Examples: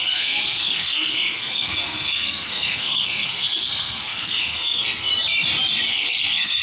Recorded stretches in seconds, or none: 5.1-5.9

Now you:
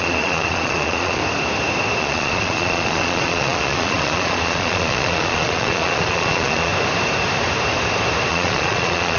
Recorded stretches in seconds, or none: 1.2-2.0; 6.7-8.3

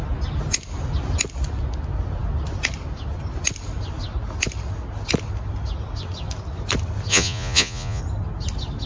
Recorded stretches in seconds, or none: 0.0-7.1; 8.0-8.9

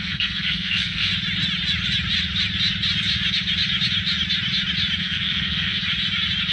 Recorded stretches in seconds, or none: 1.1-5.0; 5.8-6.5

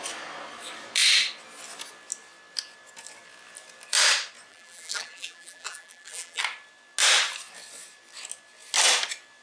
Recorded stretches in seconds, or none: 0.0-4.5; 6.4-9.4

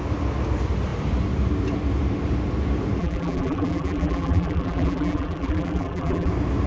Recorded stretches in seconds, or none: 0.0-3.0; 6.3-6.7

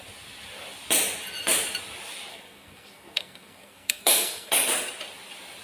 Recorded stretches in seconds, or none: 0.0-2.3; 4.5-5.6